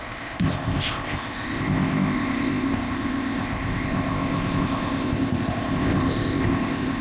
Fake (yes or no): yes